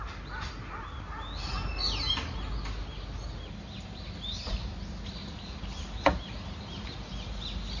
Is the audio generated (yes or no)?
no